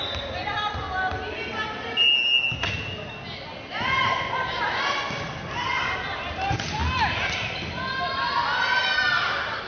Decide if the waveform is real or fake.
real